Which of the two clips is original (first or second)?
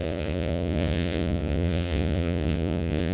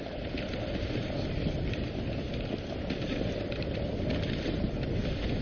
second